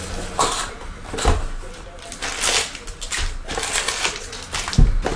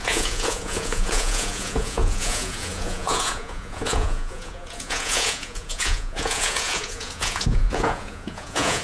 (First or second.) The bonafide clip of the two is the first